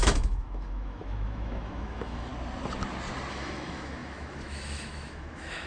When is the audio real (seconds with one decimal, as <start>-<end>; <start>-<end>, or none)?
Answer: 2.3-3.3